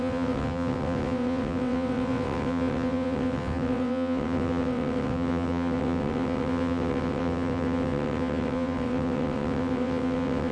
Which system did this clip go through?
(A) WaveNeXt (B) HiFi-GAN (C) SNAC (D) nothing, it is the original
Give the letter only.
A